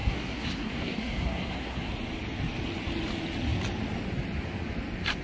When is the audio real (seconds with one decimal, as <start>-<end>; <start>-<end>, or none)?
1.9-5.2